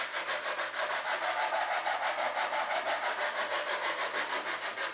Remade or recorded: recorded